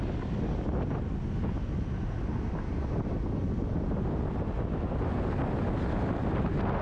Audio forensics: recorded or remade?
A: recorded